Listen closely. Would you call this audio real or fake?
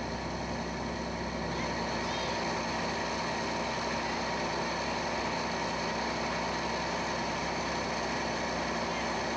real